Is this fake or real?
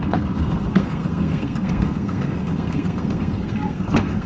fake